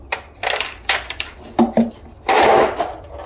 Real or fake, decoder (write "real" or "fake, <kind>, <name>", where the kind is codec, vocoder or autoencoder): real